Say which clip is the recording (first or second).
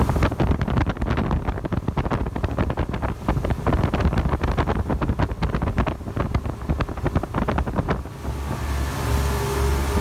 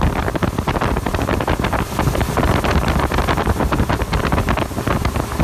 first